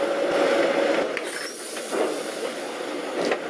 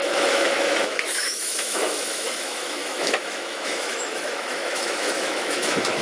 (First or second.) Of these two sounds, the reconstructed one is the second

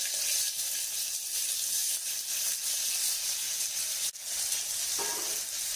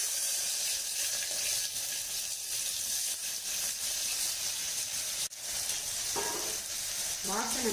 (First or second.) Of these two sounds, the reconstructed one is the second